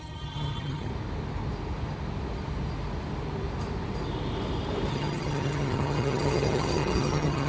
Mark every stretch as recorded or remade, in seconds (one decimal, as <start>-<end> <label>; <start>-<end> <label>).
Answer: 0.0-0.9 remade; 0.9-4.9 recorded; 4.9-7.5 remade